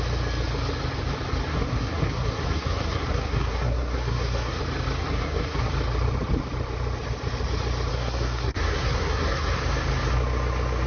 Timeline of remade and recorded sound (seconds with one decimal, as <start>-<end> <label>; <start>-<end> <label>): 0.0-1.5 recorded; 1.5-4.6 remade; 4.6-5.0 recorded; 5.0-5.7 remade; 5.7-7.9 recorded; 7.9-9.6 remade; 9.6-10.9 recorded